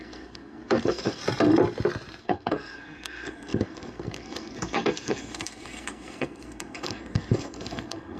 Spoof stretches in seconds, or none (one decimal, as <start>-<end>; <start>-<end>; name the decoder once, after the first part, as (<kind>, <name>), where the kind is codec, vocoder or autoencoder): 0.0-1.2 (codec, SNAC); 2.2-8.2